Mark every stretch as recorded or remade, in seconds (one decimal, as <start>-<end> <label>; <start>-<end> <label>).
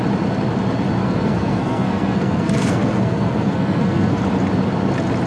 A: 0.0-1.0 recorded; 1.0-4.2 remade; 4.2-5.3 recorded